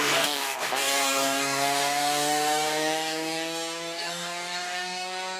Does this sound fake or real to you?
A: fake